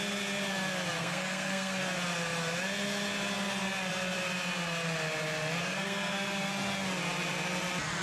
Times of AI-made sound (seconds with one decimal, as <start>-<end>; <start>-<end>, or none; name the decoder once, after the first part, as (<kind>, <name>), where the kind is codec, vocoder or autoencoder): 1.0-1.8 (codec, SNAC); 5.6-6.5